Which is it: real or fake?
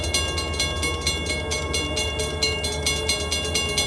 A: real